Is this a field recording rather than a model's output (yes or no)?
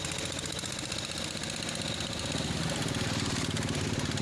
yes